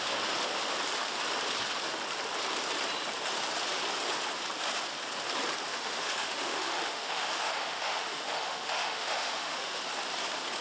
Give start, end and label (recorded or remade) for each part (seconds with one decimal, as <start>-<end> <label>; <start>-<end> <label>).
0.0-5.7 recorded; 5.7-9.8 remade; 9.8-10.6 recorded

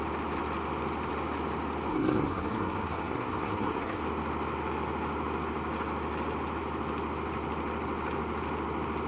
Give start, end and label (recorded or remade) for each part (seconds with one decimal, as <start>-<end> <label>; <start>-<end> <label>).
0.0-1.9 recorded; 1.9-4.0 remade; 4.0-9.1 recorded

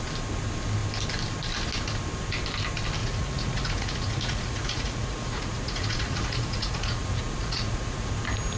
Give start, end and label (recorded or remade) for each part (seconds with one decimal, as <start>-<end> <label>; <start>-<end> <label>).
0.0-3.0 recorded; 3.0-8.1 remade; 8.1-8.6 recorded